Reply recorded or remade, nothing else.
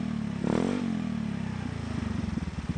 recorded